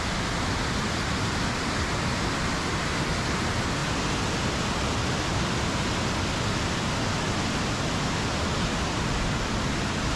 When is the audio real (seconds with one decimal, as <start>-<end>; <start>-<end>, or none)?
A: 0.0-10.2